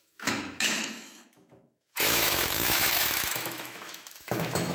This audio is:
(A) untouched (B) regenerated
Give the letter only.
B